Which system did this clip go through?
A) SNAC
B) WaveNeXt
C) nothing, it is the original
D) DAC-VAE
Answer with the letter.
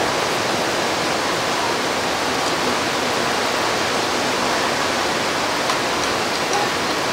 C